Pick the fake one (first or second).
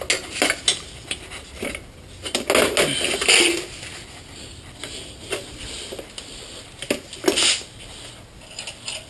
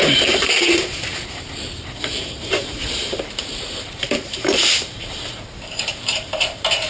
second